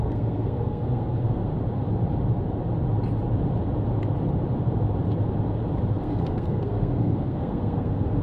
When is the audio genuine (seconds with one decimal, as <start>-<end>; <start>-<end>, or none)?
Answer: 1.5-6.0